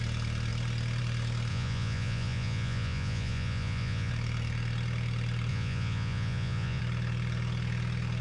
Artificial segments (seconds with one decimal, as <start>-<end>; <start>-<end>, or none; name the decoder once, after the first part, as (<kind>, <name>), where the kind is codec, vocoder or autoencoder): 1.5-4.1 (vocoder, Vocos); 5.5-6.8